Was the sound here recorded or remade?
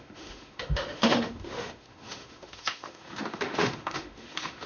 remade